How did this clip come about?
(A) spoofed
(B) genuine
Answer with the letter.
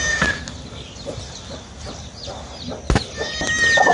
B